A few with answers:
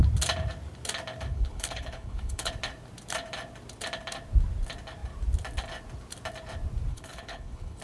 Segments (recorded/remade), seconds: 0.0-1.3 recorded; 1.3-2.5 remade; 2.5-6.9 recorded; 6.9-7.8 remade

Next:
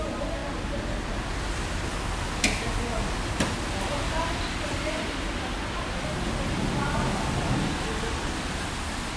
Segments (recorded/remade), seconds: 0.0-9.2 recorded

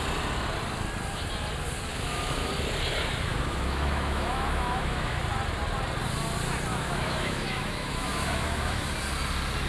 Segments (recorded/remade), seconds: 0.0-1.9 recorded; 1.9-2.5 remade; 2.5-3.3 recorded; 3.3-5.2 remade; 5.2-6.7 recorded; 6.7-8.8 remade; 8.8-9.7 recorded

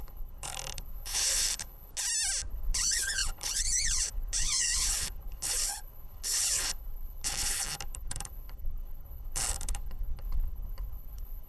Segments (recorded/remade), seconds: 0.0-1.9 remade; 1.9-2.5 recorded; 2.5-11.5 remade